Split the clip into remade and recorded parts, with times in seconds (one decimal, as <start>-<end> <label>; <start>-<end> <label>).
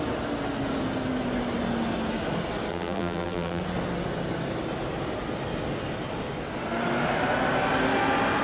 0.0-2.7 recorded; 2.7-3.6 remade; 3.6-8.4 recorded